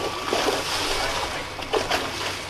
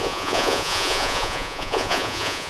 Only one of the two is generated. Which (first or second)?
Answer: second